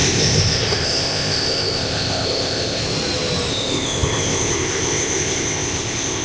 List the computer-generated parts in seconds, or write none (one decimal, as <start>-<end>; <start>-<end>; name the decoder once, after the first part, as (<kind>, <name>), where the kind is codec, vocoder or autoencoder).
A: 0.0-2.8 (codec, ZipCodec); 3.5-6.2